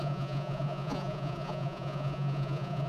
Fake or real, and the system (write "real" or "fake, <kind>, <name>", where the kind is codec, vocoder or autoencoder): fake, vocoder, Vocos